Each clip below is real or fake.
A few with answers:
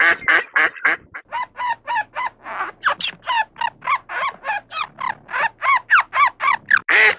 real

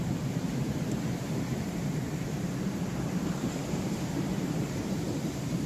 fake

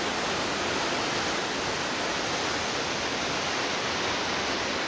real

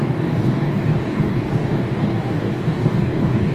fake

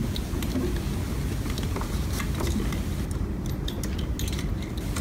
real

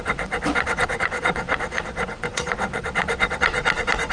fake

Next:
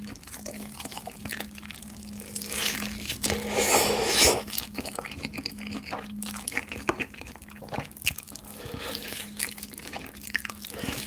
fake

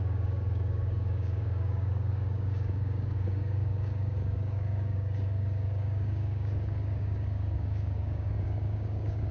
fake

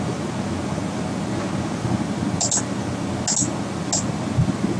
real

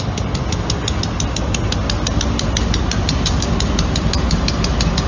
real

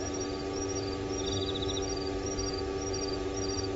real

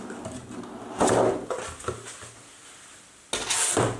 real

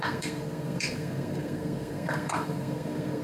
fake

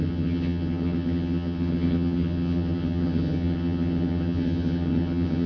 fake